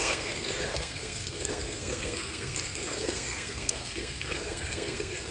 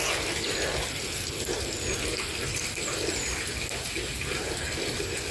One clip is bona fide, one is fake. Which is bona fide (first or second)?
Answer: second